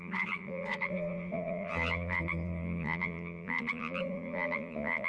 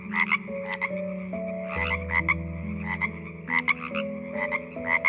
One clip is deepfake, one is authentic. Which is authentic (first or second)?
second